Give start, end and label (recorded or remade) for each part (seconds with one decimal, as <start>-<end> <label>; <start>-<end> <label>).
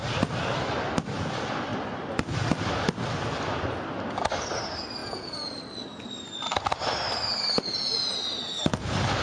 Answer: 0.0-5.0 recorded; 5.0-5.6 remade; 5.6-9.2 recorded